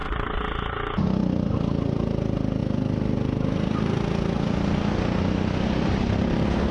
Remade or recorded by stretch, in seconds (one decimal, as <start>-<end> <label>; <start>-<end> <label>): 0.0-6.7 recorded